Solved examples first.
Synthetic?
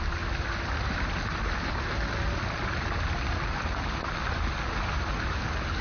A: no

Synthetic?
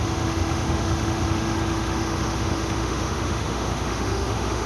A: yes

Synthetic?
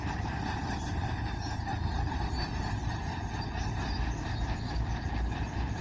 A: no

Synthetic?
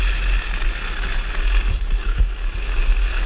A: no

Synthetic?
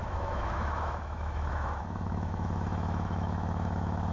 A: yes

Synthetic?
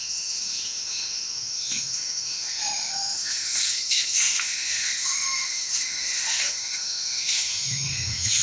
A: yes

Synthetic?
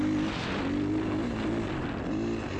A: no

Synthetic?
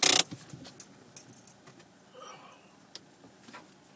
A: no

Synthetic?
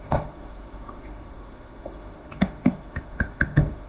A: yes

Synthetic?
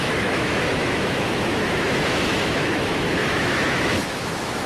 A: yes